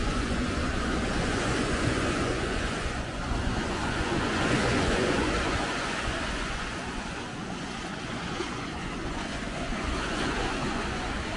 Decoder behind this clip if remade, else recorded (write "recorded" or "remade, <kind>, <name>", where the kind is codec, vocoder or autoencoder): remade, vocoder, Vocos